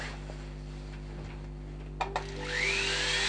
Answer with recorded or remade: recorded